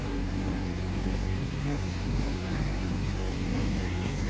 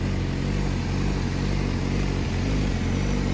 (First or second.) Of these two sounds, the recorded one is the second